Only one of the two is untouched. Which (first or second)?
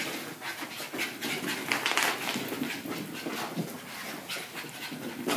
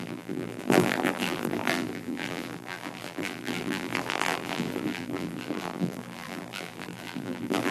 first